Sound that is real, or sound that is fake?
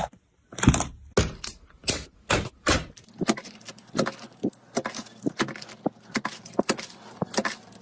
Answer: real